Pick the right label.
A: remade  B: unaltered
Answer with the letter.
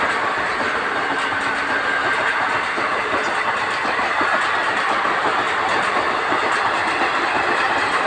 B